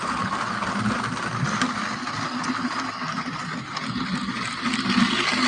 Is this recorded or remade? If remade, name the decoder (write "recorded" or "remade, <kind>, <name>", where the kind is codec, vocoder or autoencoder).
recorded